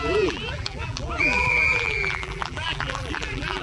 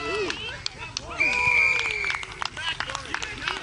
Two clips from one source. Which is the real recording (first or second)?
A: second